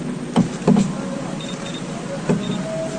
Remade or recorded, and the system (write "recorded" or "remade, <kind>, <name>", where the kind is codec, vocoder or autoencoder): recorded